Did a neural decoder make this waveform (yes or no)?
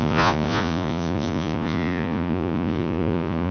yes